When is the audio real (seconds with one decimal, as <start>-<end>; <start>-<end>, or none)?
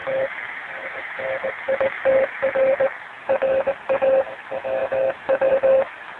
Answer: 0.0-4.8; 5.5-6.2